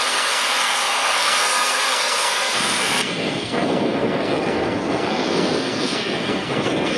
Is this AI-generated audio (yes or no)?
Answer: yes